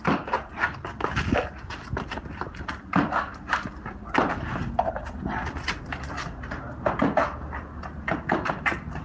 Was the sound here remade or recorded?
recorded